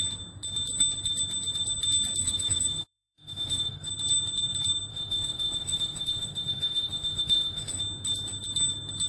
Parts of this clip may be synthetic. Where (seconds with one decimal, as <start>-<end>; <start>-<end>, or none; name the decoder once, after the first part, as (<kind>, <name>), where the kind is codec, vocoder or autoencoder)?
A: 2.2-3.9 (autoencoder, DAC-VAE); 4.9-7.8